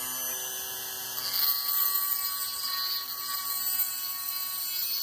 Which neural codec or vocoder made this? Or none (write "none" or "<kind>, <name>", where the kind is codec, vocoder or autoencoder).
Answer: none